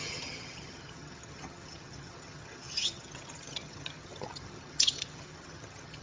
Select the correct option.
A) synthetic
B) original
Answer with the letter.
A